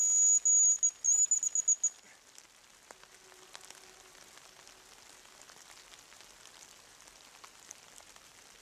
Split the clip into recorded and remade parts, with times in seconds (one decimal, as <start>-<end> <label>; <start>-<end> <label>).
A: 0.0-8.6 recorded